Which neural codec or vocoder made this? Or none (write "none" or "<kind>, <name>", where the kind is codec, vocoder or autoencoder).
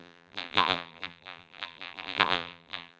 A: vocoder, BigVGAN v2